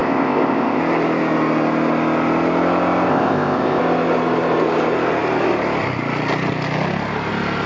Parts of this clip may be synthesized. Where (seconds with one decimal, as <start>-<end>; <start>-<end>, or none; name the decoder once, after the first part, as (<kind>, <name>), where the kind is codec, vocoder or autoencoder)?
0.0-0.8 (codec, ZipCodec); 3.1-3.8